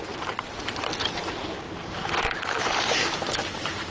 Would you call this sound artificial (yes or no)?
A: yes